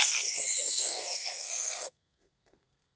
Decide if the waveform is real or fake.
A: fake